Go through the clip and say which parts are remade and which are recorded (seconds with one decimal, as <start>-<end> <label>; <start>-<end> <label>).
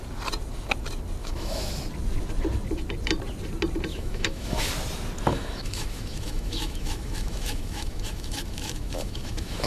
0.0-1.2 recorded; 1.2-1.7 remade; 1.7-3.9 recorded; 3.9-4.7 remade; 4.7-5.3 recorded; 5.3-9.7 remade